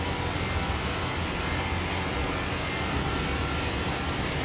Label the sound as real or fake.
real